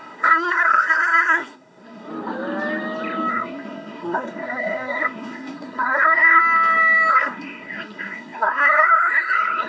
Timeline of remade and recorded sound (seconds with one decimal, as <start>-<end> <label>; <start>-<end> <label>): 0.0-2.1 remade; 2.1-3.3 recorded; 3.3-6.4 remade; 6.4-7.1 recorded; 7.1-9.7 remade